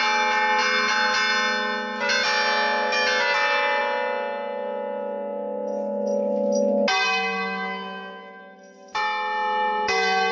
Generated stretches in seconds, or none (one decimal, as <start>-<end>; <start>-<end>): none